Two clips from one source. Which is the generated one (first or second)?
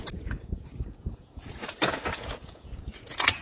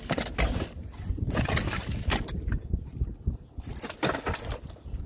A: first